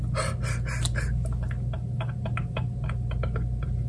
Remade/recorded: recorded